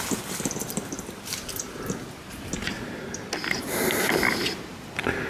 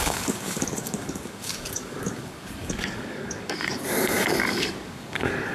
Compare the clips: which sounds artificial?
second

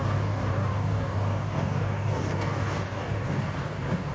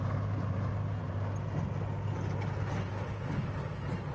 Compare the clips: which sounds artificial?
first